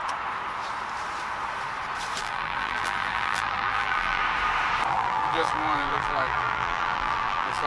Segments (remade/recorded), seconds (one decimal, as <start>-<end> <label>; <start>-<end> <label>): 0.0-2.2 recorded; 2.2-4.2 remade; 4.2-4.9 recorded; 4.9-7.7 remade